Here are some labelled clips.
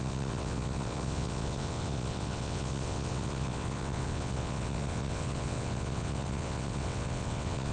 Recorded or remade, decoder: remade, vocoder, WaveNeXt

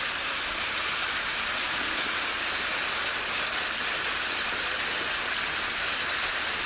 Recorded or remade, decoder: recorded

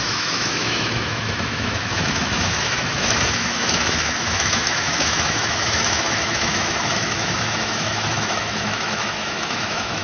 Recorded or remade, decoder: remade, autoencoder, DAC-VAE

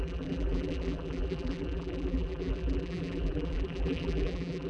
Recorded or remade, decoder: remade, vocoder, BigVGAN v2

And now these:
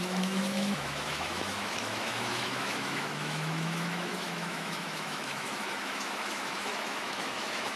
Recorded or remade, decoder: remade, autoencoder, DAC-VAE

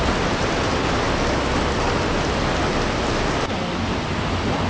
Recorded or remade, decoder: recorded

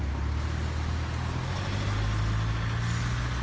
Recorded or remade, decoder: recorded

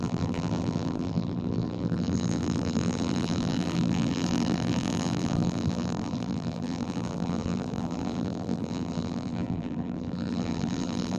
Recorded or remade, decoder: remade, vocoder, BigVGAN v2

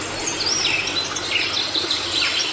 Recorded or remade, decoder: recorded